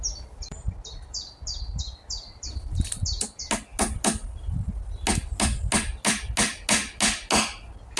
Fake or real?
real